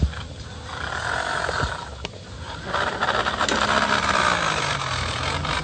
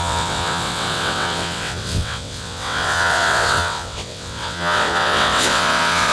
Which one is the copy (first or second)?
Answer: second